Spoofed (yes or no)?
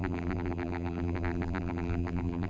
yes